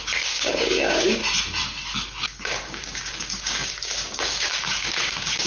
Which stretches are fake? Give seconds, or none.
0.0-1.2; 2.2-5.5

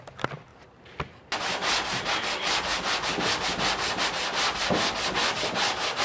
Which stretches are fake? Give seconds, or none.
none